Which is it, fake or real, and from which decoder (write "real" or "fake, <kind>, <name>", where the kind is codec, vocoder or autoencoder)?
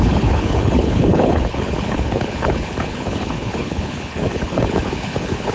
fake, codec, HILCodec